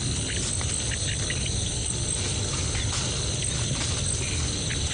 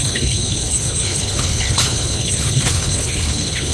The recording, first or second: first